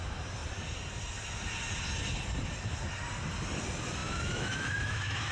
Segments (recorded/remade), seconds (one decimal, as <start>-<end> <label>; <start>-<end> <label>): 0.0-4.0 recorded; 4.0-5.3 remade